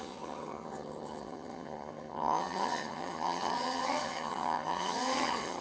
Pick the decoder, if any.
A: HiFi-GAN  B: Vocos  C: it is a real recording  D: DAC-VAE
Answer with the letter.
A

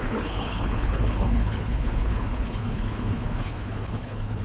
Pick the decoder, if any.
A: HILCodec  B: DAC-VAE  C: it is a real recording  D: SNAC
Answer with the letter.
A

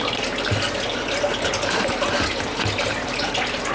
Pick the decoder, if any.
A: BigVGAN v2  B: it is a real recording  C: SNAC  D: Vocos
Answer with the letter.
B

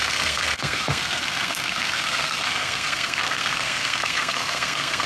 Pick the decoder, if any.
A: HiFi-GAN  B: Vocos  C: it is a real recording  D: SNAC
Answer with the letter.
D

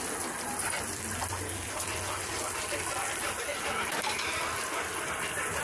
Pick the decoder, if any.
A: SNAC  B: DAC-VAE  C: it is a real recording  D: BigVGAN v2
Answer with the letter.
C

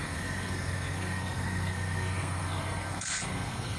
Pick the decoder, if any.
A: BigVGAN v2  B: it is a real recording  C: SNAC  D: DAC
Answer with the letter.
C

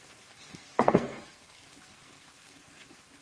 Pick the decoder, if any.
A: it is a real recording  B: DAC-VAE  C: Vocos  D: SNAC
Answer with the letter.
D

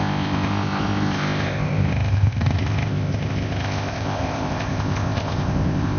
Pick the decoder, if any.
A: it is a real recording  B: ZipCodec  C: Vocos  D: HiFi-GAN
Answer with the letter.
B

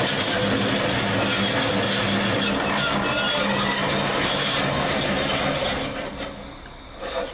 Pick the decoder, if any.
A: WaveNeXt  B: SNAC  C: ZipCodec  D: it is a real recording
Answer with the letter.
D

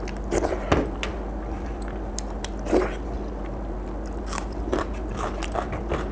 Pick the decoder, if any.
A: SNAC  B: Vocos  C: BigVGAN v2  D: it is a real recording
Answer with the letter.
D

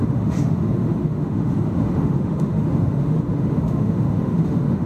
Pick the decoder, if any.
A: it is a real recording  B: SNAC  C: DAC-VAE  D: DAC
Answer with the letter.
C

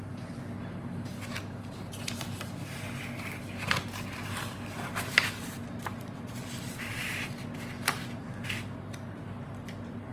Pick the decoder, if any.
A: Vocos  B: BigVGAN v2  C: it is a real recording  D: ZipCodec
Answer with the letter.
C